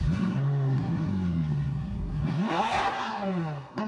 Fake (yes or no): yes